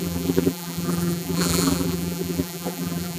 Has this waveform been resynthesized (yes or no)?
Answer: yes